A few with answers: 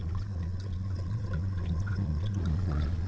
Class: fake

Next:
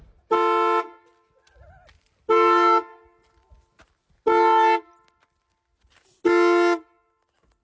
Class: real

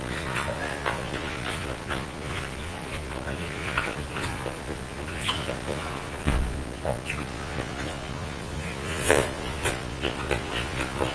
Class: fake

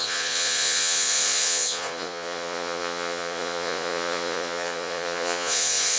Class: fake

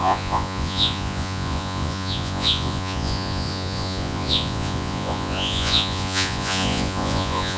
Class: fake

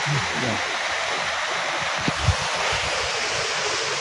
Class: real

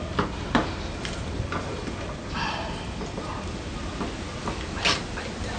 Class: real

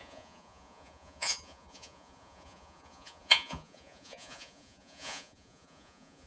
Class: fake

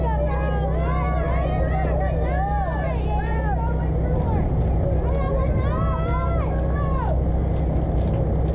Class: real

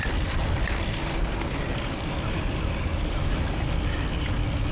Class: real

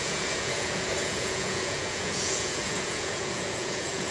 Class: fake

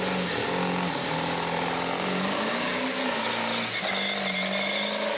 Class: real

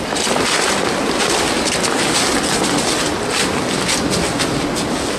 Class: real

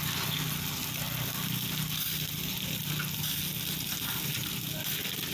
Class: real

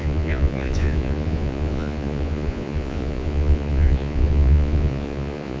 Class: fake